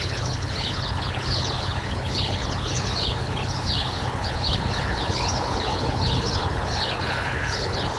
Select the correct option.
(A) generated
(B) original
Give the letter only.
A